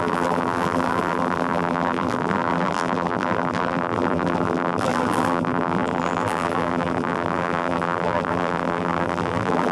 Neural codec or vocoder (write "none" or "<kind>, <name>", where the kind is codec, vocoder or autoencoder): vocoder, BigVGAN v2